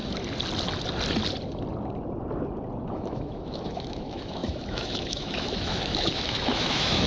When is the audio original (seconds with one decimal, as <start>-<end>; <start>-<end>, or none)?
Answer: 0.0-2.9